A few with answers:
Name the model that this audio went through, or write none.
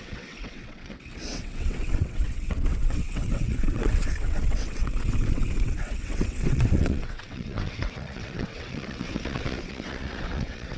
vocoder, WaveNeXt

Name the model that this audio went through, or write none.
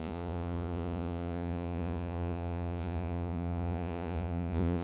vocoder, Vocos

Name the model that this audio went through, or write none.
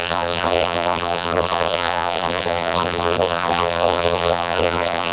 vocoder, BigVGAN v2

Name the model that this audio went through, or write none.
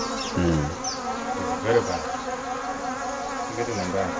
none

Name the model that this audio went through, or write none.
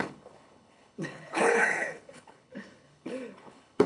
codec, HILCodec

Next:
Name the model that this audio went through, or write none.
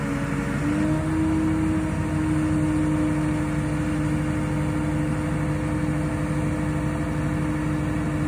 none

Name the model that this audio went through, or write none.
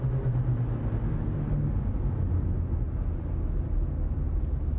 none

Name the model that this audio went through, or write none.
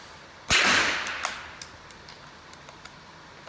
none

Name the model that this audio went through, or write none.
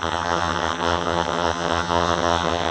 vocoder, HiFi-GAN